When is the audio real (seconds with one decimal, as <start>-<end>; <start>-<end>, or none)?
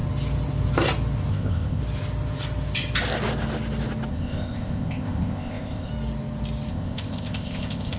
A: 0.0-1.3; 1.8-4.1; 5.9-6.7